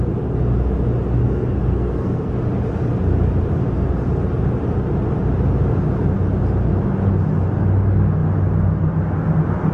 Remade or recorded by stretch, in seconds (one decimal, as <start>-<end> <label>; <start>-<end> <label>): 0.0-1.2 recorded; 1.2-2.3 remade; 2.3-9.7 recorded